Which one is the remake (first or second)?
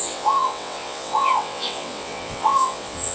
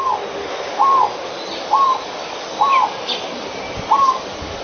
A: first